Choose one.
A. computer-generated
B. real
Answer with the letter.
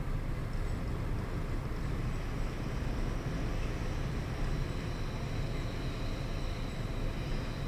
B